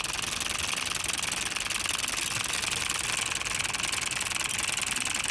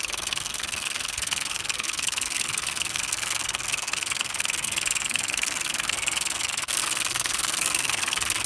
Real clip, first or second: first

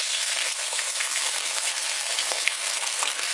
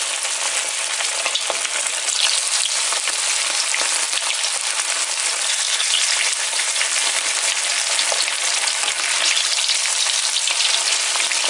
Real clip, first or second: second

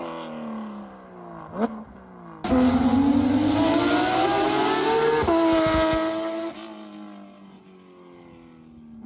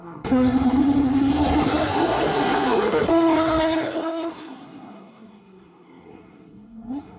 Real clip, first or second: first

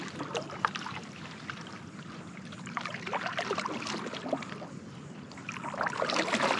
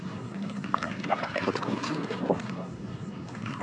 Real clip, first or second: first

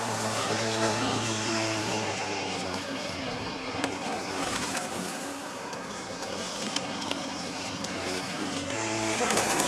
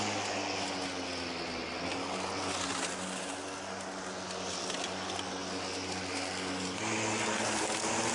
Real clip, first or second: second